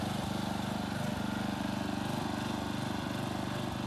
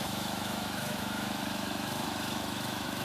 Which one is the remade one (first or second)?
second